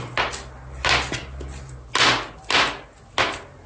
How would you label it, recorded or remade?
recorded